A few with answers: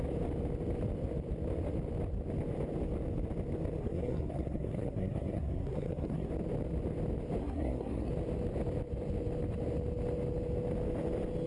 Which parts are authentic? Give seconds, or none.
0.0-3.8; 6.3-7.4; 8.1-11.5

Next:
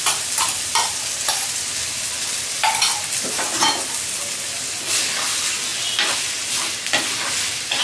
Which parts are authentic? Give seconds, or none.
0.0-7.8

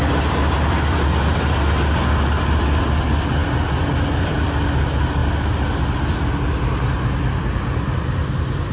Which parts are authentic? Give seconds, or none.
0.0-8.7

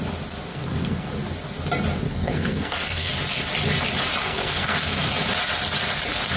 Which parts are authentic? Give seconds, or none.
0.0-0.5; 1.1-2.1; 3.1-4.2; 5.1-6.4

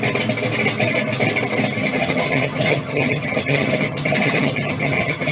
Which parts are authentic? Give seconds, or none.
0.0-1.8

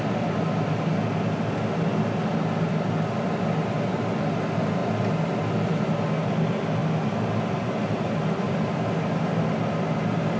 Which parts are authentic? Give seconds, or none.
0.0-10.4